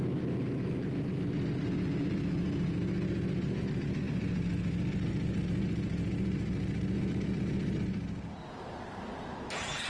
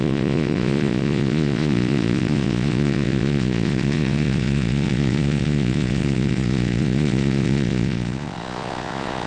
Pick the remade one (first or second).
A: second